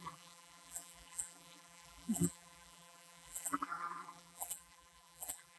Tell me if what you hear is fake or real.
fake